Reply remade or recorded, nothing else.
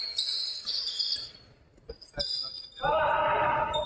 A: recorded